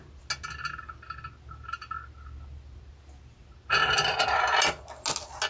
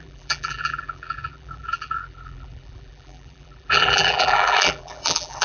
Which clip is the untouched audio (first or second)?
first